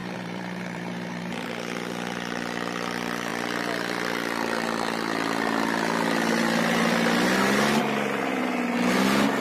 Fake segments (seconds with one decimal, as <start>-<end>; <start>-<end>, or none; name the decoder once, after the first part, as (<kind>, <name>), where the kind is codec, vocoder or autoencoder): 0.0-1.5 (vocoder, BigVGAN v2)